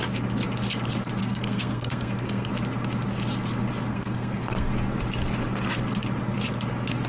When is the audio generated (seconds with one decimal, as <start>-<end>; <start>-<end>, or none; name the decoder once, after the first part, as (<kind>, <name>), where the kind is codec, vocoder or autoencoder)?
1.2-2.5 (codec, SNAC); 3.9-4.7